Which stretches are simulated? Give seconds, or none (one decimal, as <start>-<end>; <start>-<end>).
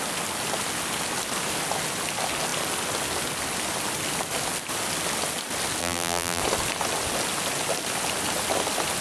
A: 5.8-6.4